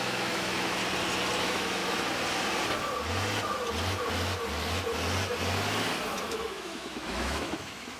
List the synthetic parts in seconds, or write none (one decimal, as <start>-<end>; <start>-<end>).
0.0-0.8; 1.4-1.8; 6.2-8.0